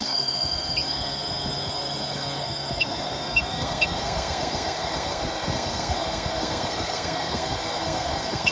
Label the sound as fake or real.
fake